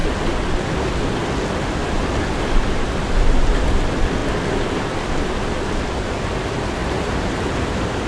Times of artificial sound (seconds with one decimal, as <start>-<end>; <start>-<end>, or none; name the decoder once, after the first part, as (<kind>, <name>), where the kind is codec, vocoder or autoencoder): 1.8-3.1 (vocoder, BigVGAN v2); 6.8-8.1